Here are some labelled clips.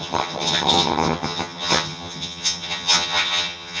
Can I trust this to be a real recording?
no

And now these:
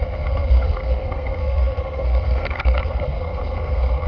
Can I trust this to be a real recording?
no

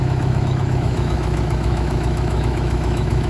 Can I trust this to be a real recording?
no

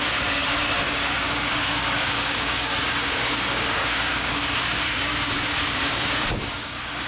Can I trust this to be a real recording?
no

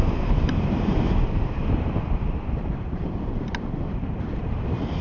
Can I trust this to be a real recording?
no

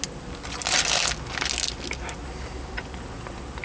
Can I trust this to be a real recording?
yes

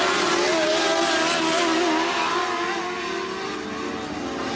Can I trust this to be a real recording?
yes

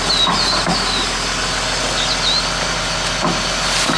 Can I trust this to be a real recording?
yes